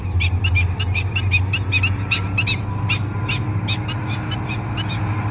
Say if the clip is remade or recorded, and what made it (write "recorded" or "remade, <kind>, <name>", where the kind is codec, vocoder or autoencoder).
recorded